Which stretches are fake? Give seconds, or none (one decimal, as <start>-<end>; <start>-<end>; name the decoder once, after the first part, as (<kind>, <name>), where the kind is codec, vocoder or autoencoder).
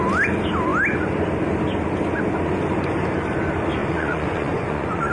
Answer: 3.8-5.1 (vocoder, Vocos)